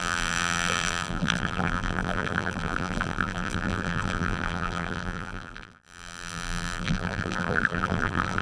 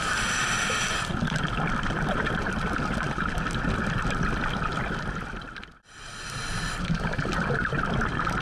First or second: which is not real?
first